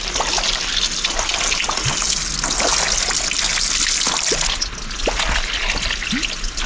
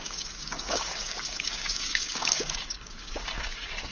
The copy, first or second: second